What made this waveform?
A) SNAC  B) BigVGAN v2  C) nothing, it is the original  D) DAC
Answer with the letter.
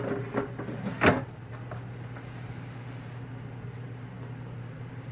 C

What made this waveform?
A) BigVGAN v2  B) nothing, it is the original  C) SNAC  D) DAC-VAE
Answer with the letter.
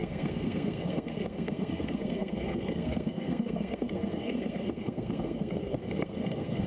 C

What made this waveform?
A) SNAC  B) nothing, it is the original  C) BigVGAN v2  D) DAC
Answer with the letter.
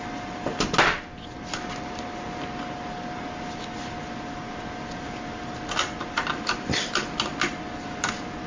B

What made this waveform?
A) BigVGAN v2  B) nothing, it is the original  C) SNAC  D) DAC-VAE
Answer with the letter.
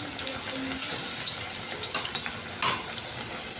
B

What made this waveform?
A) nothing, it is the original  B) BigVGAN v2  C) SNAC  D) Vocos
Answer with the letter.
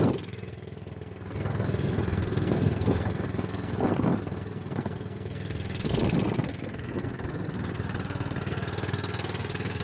C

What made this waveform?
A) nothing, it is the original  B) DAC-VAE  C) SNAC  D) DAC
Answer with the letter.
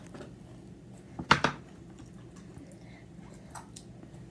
A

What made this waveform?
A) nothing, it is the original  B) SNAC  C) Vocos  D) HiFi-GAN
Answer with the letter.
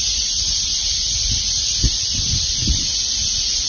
A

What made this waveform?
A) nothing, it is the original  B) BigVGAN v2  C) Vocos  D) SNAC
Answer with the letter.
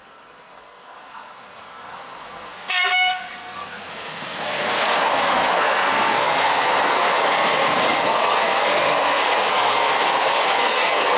D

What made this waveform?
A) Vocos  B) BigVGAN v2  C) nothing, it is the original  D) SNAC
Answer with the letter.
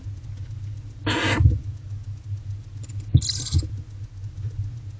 C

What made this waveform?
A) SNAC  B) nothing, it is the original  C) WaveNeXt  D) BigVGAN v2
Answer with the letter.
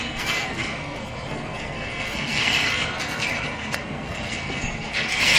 A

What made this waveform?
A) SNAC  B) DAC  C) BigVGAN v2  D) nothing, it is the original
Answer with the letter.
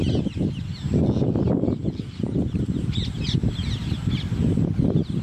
D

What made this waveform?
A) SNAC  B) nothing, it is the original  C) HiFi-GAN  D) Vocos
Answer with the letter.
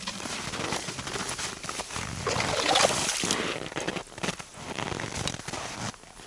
B